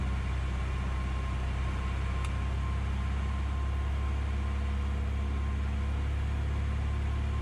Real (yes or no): yes